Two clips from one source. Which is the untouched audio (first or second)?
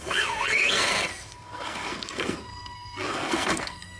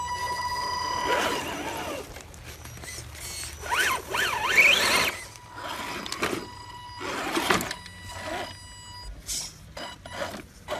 second